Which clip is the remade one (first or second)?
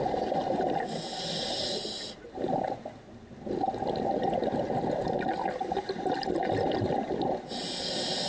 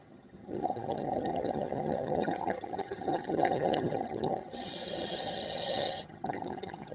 second